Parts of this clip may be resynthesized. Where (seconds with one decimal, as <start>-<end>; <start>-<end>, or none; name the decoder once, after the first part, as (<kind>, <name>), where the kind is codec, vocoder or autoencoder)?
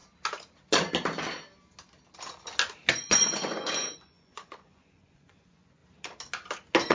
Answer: 2.9-5.8 (vocoder, Vocos)